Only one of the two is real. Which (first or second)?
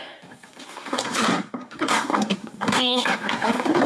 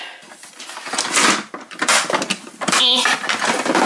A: second